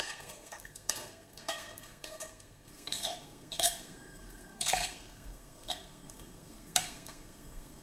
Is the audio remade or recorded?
remade